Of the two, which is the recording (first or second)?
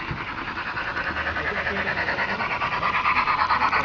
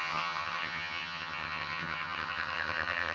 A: first